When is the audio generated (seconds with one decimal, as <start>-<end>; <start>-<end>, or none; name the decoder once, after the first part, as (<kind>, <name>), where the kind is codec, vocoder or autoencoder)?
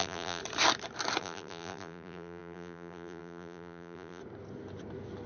0.0-0.4 (vocoder, BigVGAN v2); 1.2-4.2